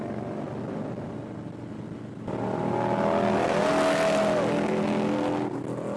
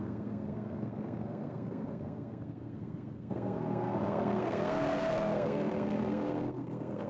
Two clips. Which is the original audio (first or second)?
first